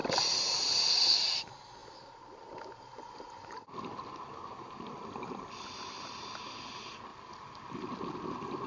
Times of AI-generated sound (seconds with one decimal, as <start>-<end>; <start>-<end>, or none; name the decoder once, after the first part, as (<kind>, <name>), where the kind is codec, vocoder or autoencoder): 0.0-0.8 (vocoder, BigVGAN v2); 1.8-3.8; 7.1-7.7